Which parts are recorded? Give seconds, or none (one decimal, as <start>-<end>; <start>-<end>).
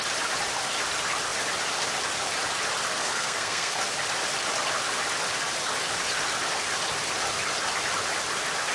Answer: 0.0-2.9; 3.8-8.7